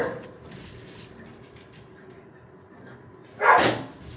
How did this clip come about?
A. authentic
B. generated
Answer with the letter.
A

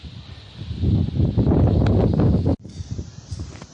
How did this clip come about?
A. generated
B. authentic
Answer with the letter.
B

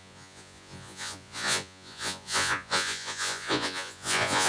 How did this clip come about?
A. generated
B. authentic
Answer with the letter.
A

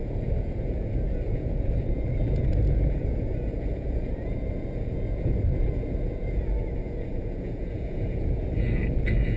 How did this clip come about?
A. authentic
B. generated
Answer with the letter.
B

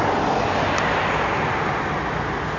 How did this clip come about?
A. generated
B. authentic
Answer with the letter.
B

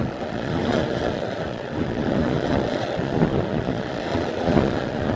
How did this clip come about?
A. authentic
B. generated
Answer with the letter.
B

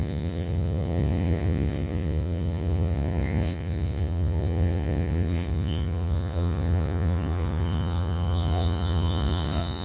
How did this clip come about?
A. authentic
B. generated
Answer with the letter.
B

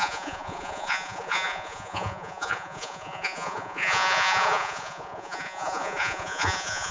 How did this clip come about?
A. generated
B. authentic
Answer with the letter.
A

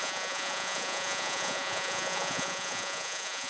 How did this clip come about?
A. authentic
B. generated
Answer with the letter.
B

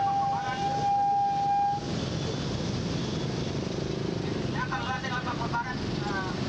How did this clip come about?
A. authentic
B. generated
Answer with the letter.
A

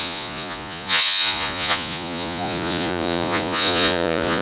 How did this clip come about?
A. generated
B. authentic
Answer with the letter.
A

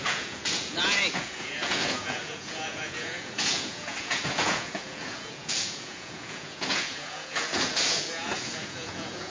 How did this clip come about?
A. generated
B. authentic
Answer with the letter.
A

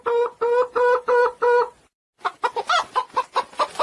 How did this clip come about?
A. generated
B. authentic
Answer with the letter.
B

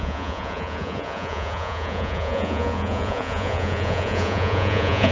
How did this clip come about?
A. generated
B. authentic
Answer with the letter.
A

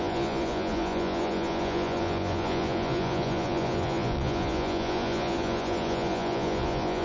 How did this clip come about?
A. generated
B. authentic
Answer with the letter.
A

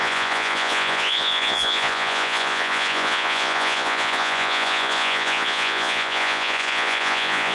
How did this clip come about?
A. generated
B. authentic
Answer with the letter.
A